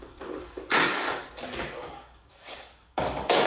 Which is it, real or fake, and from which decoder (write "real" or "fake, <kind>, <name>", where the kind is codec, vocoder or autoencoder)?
fake, codec, DAC